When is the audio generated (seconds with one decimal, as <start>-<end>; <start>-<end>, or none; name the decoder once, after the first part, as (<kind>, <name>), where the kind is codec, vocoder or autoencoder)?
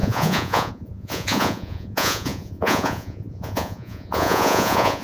0.0-5.0 (vocoder, Vocos)